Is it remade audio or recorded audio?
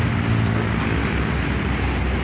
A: recorded